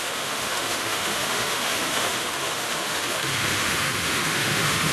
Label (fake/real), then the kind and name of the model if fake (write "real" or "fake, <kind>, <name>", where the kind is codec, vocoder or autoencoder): fake, autoencoder, DAC-VAE